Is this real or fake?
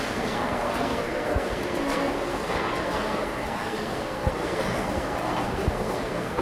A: fake